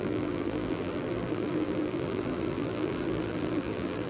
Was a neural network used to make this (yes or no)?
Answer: yes